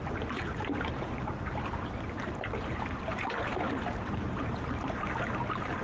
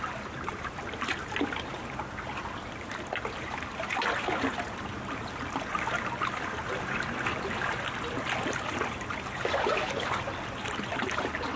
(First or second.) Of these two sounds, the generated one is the first